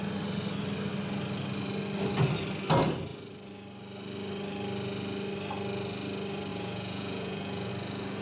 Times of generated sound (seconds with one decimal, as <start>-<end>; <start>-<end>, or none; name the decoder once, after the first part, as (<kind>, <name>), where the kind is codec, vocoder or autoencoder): 6.5-7.7 (vocoder, Vocos)